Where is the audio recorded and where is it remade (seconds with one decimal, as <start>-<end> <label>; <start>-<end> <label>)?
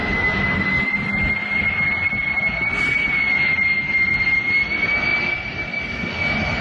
0.0-6.6 recorded